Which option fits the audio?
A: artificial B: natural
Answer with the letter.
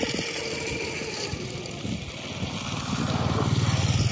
B